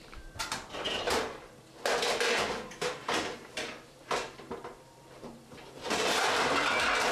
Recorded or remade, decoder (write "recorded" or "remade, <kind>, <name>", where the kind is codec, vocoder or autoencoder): remade, vocoder, BigVGAN v2